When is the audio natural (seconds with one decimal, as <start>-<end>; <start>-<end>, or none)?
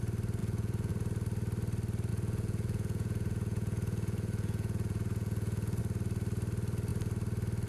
0.0-0.4; 0.9-2.1; 5.8-7.7